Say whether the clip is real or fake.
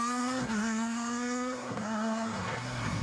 fake